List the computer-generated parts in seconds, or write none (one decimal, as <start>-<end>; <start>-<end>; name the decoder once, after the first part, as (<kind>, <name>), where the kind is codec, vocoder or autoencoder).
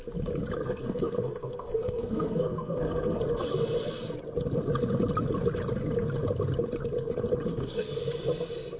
0.6-3.2 (codec, SNAC); 7.5-8.0